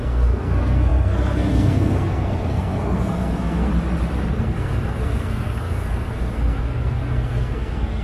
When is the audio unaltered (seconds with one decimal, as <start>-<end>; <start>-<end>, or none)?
3.7-4.4